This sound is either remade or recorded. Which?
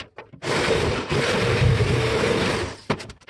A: remade